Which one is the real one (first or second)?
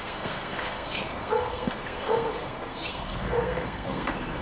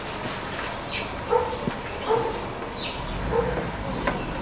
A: second